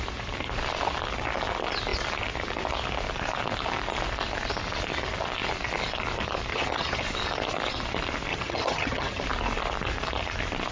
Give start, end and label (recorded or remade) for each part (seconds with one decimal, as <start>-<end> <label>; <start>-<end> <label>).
0.0-6.5 recorded; 6.5-7.0 remade; 7.0-8.3 recorded; 8.3-9.2 remade; 9.2-10.7 recorded